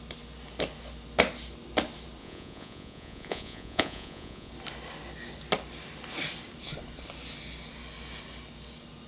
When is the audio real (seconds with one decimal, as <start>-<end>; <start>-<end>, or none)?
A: 0.0-2.2; 4.5-9.1